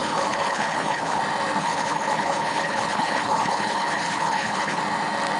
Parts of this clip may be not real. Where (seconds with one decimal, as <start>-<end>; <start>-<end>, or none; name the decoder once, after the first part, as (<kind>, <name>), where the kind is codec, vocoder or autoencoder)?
0.0-1.2 (codec, HILCodec); 1.6-4.8